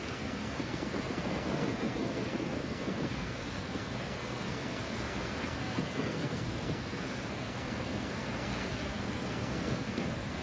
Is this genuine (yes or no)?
no